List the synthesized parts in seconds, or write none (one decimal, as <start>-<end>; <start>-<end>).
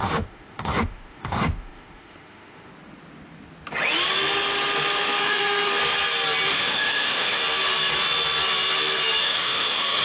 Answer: 0.0-2.7; 5.2-5.7; 6.5-7.4; 9.2-10.0